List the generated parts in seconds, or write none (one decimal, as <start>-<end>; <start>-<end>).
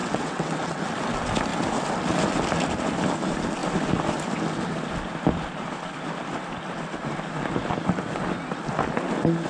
0.0-0.8